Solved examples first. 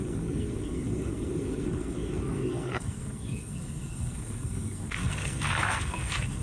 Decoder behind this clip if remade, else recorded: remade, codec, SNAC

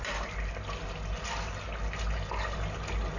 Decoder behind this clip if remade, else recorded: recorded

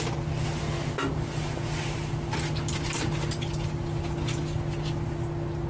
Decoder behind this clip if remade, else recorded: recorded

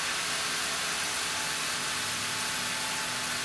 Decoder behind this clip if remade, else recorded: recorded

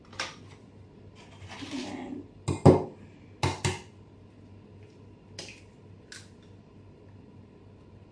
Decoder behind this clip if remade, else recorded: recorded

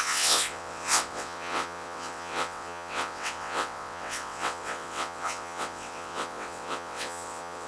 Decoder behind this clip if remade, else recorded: remade, vocoder, WaveNeXt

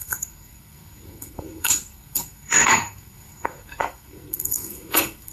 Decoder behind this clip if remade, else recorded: remade, codec, SNAC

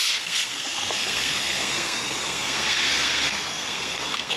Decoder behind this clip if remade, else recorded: remade, codec, SNAC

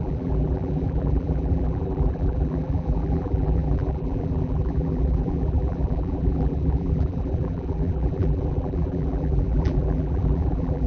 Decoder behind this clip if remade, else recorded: remade, vocoder, BigVGAN v2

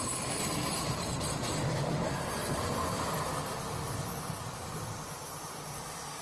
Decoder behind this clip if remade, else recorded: recorded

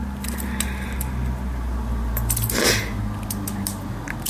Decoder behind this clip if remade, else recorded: recorded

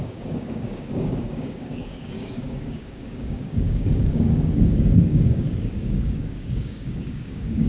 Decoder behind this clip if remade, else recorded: remade, codec, DAC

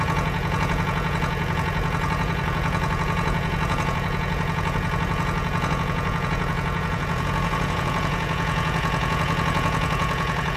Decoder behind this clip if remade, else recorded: remade, vocoder, Vocos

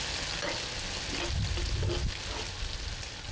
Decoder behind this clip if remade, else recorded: recorded